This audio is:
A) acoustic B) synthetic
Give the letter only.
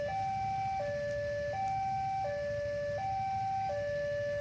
A